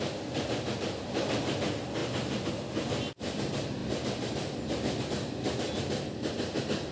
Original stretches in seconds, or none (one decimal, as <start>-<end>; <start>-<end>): 0.0-6.9